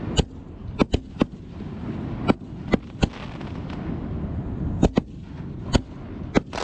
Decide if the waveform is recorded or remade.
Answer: recorded